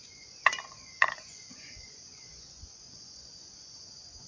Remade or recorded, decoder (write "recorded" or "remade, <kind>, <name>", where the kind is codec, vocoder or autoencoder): remade, vocoder, Vocos